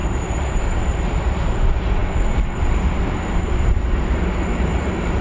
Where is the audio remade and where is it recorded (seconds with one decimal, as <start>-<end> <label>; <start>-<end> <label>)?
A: 0.0-5.2 remade